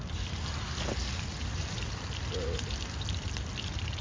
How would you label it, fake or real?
real